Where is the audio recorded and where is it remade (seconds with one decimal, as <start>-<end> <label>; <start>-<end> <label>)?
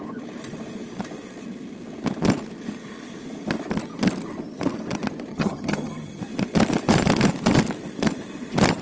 0.0-5.3 recorded; 5.3-6.2 remade; 6.2-8.8 recorded